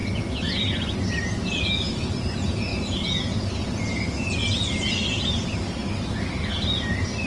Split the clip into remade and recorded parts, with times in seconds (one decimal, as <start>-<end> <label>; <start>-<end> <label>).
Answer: 0.0-2.7 recorded; 2.7-4.9 remade; 4.9-7.3 recorded